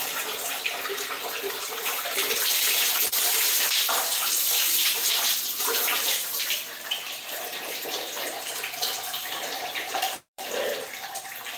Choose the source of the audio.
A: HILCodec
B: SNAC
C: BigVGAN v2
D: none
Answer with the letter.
C